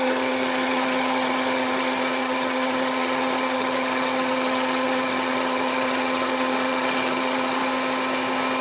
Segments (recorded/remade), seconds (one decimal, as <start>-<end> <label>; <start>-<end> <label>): 0.0-7.6 remade; 7.6-8.6 recorded